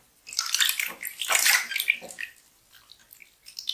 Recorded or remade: recorded